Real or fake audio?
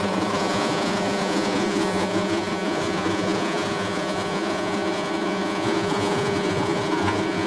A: fake